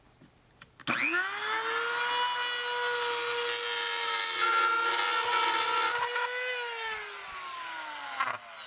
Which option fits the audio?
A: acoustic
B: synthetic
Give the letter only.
A